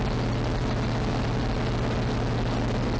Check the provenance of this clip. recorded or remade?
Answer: recorded